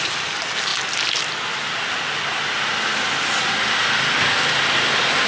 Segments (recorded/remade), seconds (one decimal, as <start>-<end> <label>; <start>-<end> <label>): 0.0-5.3 recorded